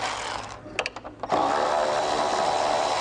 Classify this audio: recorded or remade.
recorded